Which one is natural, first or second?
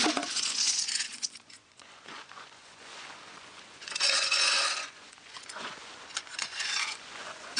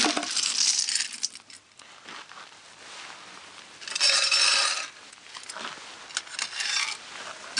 second